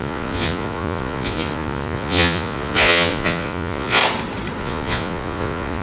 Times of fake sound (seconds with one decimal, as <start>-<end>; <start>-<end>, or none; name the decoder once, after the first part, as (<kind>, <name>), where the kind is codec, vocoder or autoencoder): 0.0-4.0 (vocoder, Vocos); 4.6-5.8

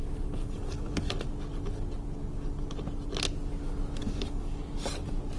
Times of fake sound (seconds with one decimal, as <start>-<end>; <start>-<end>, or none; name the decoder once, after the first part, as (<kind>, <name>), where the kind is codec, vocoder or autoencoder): 0.4-1.1 (codec, DAC); 4.0-4.6

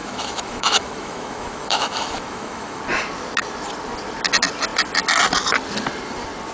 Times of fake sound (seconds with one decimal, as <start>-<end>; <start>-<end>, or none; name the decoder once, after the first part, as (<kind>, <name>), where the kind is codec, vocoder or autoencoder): 0.0-2.8 (autoencoder, DAC-VAE)

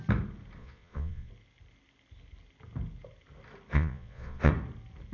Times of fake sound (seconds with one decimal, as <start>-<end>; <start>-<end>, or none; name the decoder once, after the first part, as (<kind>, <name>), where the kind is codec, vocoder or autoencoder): 0.6-1.3 (vocoder, Vocos); 3.7-4.5

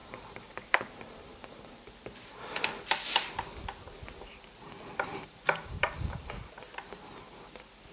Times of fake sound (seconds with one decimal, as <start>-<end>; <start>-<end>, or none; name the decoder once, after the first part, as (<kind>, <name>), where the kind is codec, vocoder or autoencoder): 0.0-2.6 (vocoder, BigVGAN v2); 5.1-6.5